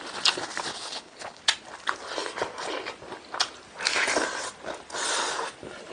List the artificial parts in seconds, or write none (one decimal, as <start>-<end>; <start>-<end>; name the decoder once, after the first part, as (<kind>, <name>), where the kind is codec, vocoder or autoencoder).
0.7-1.4 (codec, HILCodec)